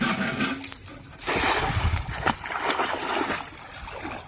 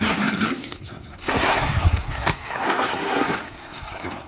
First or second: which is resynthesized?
second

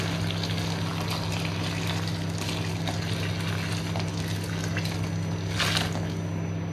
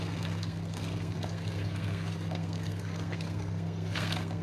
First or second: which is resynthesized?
second